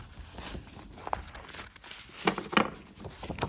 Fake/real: real